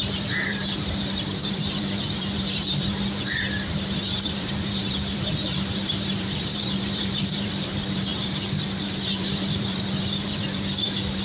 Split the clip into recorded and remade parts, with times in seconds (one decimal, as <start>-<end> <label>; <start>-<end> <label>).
0.0-11.2 remade